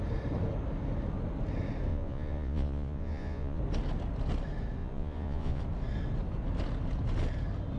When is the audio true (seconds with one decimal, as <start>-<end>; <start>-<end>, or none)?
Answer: 0.0-1.9; 3.6-4.8; 5.6-7.8